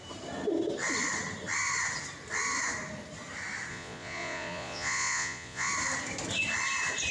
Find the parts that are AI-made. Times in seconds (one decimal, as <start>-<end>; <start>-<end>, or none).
3.7-5.7

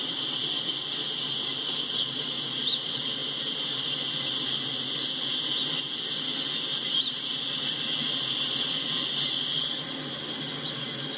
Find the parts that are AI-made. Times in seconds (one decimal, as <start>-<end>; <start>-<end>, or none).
none